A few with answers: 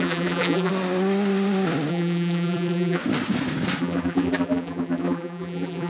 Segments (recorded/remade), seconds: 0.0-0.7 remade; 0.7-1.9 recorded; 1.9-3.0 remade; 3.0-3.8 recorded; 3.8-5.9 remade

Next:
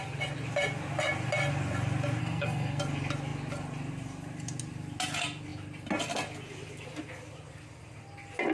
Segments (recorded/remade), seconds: 0.0-2.2 recorded; 2.2-2.8 remade; 2.8-8.5 recorded

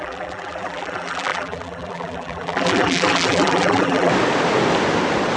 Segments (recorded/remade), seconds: 0.0-4.1 remade; 4.1-5.4 recorded

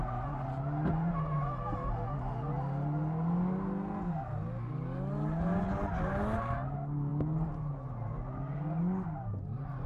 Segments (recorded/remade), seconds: 0.0-9.9 recorded

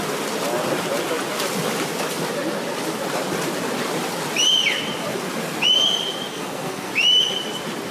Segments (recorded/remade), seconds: 0.0-6.3 recorded; 6.3-6.9 remade; 6.9-7.9 recorded

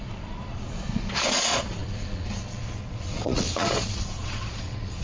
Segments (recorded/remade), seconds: 0.0-5.0 remade